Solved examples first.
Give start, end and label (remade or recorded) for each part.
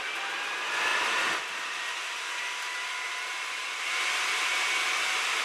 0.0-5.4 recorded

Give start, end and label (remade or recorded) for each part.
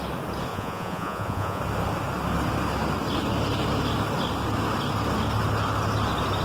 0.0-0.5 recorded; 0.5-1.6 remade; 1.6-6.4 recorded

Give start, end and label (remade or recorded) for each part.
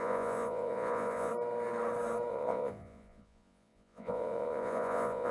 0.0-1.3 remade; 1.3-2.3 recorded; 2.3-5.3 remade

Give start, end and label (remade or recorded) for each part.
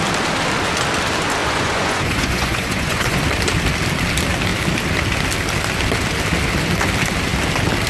0.0-1.4 recorded; 1.4-3.2 remade; 3.2-7.9 recorded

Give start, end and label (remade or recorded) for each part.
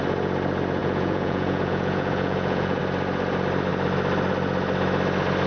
0.0-0.8 recorded; 0.8-2.8 remade; 2.8-5.5 recorded